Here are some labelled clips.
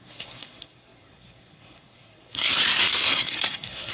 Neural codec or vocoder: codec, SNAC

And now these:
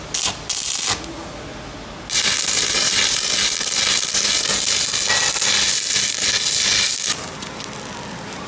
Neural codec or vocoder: none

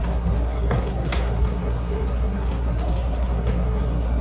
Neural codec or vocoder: codec, SNAC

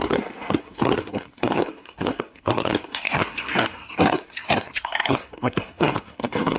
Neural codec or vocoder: codec, SNAC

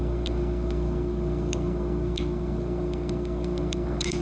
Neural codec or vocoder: codec, SNAC